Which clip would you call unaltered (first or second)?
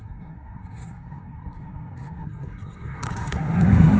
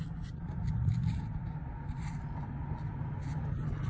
second